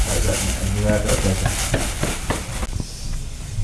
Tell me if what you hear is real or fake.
real